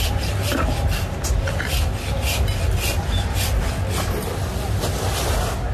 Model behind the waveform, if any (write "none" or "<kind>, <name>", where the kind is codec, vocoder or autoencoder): none